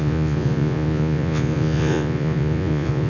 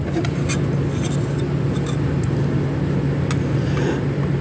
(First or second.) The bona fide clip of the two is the second